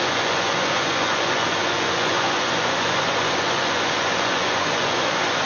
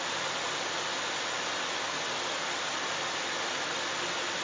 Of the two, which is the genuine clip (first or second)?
second